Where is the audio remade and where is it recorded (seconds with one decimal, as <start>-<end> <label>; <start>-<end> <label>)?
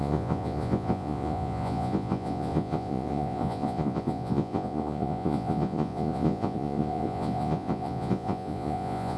0.0-9.2 remade